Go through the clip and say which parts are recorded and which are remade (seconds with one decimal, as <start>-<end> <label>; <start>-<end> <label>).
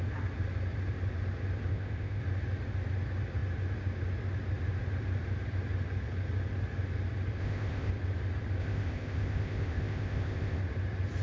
0.0-1.7 recorded; 1.7-2.2 remade; 2.2-7.4 recorded; 7.4-7.9 remade; 7.9-8.6 recorded; 8.6-10.6 remade; 10.6-11.2 recorded